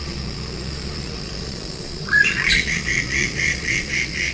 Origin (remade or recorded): remade